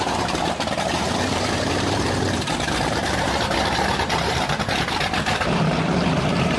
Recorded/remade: remade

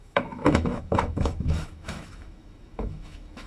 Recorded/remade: remade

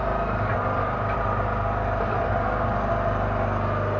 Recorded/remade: recorded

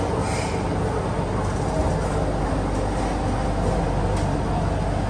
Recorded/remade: recorded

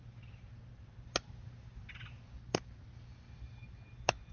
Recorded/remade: recorded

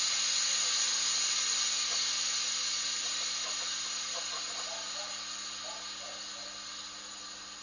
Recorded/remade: recorded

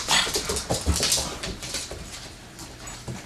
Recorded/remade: remade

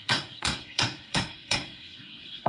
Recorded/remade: remade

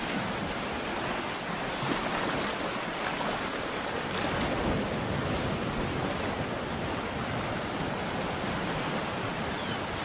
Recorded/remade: recorded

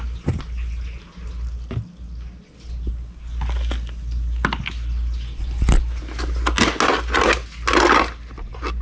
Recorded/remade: recorded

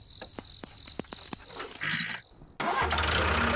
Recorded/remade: recorded